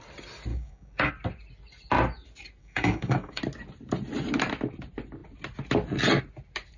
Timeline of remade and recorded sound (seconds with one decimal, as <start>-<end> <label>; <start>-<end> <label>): 0.0-0.5 recorded; 0.5-1.1 remade; 1.1-2.6 recorded; 2.6-3.4 remade; 3.4-6.8 recorded